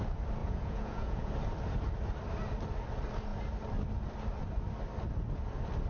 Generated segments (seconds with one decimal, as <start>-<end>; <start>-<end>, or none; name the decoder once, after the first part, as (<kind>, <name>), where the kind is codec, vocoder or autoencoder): 0.4-1.3 (vocoder, Vocos)